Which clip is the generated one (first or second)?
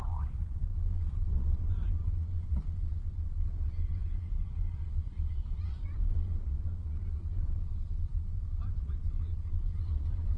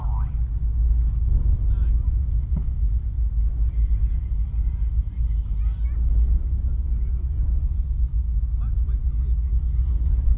first